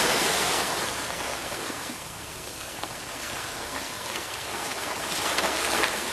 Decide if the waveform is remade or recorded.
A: remade